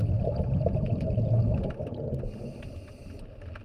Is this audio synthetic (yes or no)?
no